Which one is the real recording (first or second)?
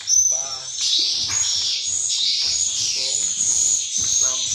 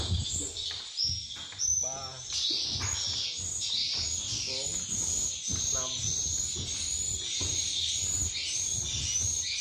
second